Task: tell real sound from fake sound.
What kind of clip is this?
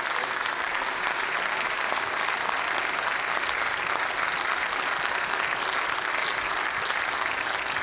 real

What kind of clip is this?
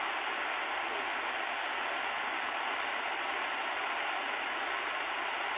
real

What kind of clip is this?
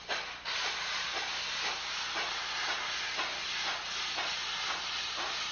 real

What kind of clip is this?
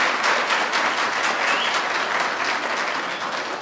real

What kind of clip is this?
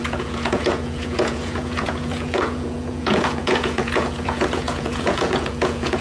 fake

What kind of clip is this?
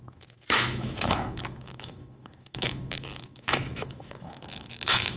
fake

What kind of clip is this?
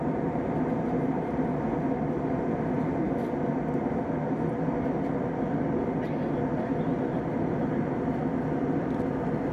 real